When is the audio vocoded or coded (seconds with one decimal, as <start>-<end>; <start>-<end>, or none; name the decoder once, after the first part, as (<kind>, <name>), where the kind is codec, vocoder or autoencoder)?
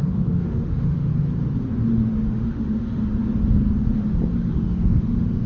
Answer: 0.0-1.1 (autoencoder, DAC-VAE); 2.3-3.0; 4.5-5.5